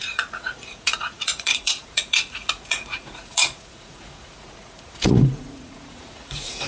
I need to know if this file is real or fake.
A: fake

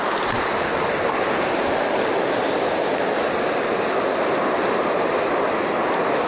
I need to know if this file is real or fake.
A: real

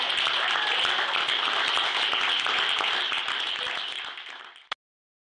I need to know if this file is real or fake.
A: real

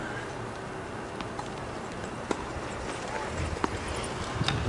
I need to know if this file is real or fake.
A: real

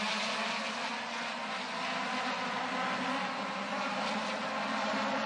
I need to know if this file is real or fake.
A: real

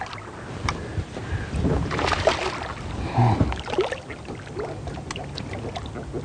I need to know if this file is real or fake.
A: real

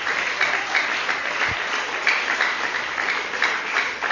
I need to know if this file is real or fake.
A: real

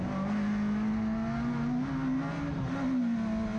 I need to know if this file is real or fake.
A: real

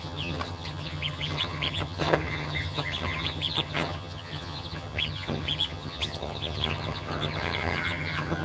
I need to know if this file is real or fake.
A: fake